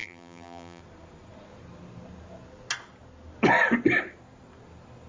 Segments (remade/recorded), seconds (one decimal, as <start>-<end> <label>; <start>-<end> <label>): 0.0-0.8 remade; 0.8-5.1 recorded